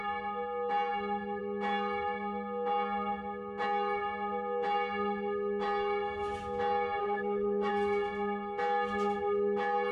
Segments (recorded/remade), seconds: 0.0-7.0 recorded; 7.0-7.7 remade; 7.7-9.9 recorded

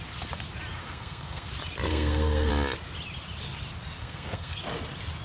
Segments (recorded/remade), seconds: 0.0-0.8 recorded; 0.8-1.5 remade; 1.5-1.9 recorded; 1.9-2.5 remade; 2.5-4.0 recorded; 4.0-4.6 remade; 4.6-5.2 recorded

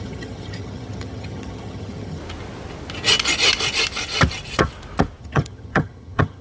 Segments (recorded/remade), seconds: 0.0-2.2 remade; 2.2-5.2 recorded; 5.2-6.4 remade